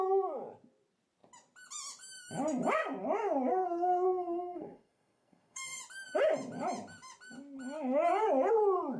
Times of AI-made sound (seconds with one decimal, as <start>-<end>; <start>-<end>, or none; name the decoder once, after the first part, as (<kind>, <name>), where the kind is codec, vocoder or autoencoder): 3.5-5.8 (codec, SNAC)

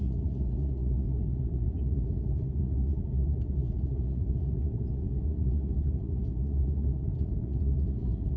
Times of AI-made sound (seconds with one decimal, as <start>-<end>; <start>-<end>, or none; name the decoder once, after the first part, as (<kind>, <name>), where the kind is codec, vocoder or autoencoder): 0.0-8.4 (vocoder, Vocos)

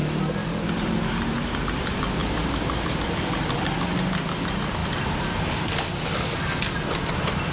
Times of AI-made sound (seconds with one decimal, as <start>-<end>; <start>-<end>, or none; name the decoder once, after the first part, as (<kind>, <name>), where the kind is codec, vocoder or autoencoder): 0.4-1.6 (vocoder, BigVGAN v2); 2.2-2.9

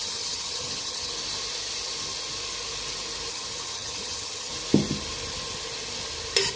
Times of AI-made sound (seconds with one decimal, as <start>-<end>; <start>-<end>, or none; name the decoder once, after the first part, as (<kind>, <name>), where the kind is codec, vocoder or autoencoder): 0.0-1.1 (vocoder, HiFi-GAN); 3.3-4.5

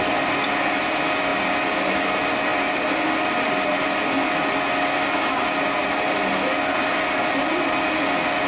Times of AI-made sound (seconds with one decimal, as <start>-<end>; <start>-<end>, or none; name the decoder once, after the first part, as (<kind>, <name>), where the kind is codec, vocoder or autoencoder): none

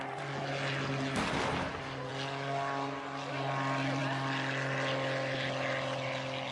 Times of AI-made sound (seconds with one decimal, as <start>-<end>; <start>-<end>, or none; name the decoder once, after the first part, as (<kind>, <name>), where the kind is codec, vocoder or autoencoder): none

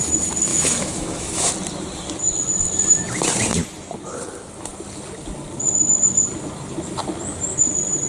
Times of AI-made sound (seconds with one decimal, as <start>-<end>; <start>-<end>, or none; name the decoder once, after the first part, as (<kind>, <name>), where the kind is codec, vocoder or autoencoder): 0.5-1.5 (autoencoder, DAC-VAE)

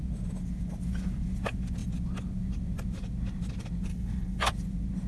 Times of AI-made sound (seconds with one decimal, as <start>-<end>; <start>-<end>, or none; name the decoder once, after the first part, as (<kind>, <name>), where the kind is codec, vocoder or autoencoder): 3.9-4.4 (codec, HILCodec)